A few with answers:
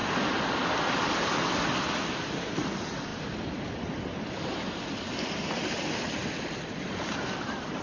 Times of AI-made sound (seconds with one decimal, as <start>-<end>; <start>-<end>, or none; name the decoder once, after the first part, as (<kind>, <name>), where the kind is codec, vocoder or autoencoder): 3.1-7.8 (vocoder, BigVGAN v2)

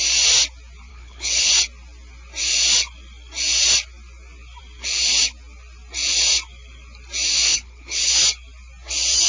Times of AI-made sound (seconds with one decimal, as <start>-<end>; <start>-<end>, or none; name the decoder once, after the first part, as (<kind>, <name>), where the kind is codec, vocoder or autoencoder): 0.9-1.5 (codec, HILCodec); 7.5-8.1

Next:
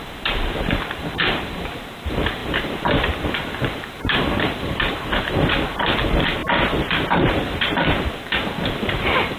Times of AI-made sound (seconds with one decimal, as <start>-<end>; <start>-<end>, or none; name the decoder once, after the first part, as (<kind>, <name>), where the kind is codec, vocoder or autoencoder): 0.0-6.4 (vocoder, BigVGAN v2); 7.1-9.4